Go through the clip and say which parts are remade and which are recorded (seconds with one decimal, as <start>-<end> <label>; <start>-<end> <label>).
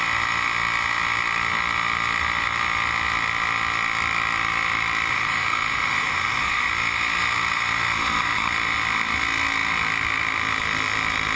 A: 0.0-5.1 recorded; 5.1-6.7 remade; 6.7-11.4 recorded